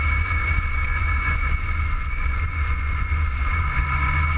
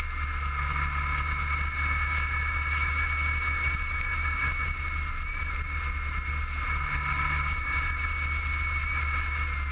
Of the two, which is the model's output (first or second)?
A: first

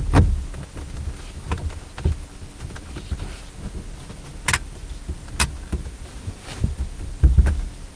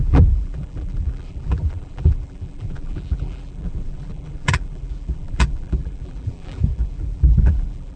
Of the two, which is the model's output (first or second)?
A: second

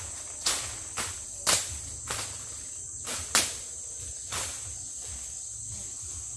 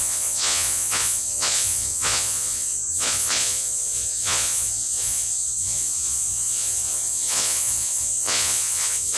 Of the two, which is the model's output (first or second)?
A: second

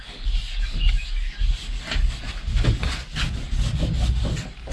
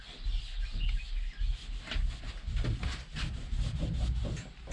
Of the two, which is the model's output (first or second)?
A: first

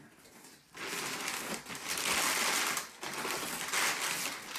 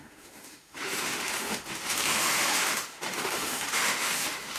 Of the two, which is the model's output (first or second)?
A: second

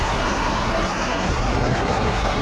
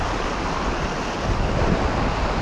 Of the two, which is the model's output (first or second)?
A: first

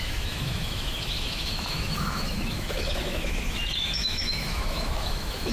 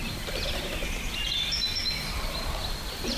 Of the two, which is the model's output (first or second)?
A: first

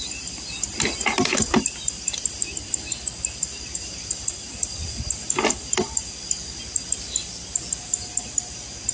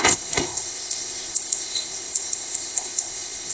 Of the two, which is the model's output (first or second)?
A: second